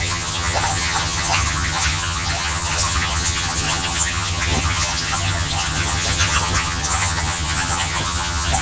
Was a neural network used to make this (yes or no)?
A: yes